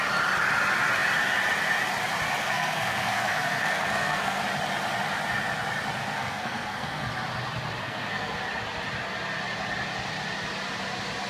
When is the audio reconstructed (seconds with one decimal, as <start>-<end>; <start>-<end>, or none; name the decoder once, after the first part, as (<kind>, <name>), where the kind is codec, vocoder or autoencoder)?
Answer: 2.4-4.4 (codec, SNAC); 6.0-7.1; 7.8-8.4